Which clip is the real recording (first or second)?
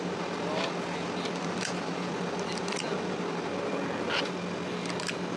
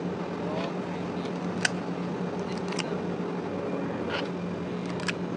second